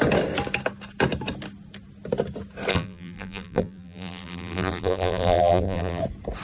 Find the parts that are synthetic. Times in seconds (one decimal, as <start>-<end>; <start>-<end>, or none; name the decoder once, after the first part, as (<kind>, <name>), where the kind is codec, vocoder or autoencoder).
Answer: 2.7-6.0 (vocoder, BigVGAN v2)

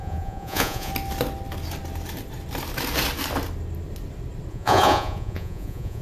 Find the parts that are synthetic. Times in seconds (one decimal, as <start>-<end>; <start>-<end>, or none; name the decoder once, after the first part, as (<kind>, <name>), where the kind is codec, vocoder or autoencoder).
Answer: 0.0-0.9 (vocoder, Vocos); 4.5-6.0